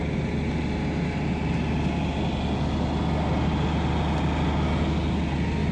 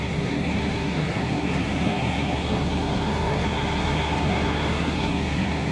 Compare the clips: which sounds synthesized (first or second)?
second